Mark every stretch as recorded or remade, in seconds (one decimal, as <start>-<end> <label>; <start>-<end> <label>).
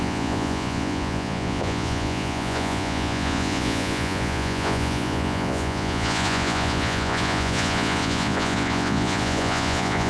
0.0-10.1 remade